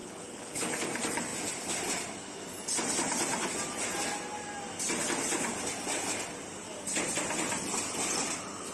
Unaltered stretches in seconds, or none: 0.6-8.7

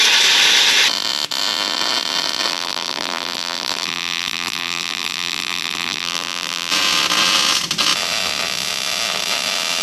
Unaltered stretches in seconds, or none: 0.0-2.5; 6.7-9.8

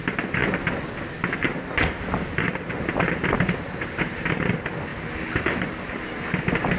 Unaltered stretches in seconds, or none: 0.0-6.8

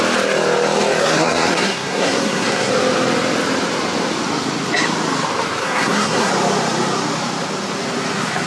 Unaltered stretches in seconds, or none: 0.0-1.0; 2.7-5.6; 6.3-8.5

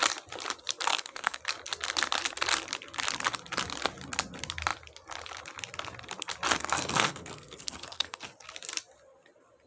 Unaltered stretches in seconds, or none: 0.0-0.9; 1.4-6.6; 8.2-9.7

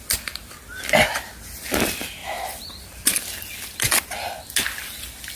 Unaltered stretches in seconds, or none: 0.0-5.4

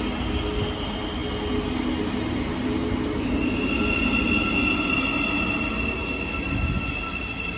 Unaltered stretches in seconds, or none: 0.0-7.6